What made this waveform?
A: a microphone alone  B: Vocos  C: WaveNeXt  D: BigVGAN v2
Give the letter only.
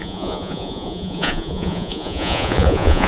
B